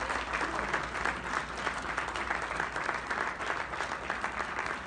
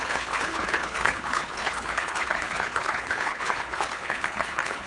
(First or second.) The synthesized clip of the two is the second